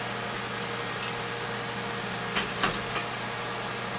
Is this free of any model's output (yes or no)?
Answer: yes